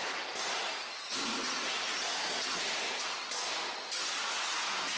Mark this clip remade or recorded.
recorded